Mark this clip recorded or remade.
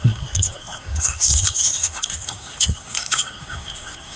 remade